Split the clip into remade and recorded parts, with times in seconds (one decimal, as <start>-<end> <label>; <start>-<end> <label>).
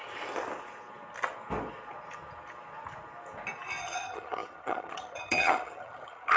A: 0.0-3.8 recorded; 3.8-6.4 remade